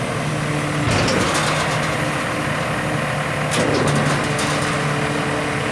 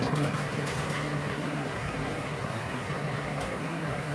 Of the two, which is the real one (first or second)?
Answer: first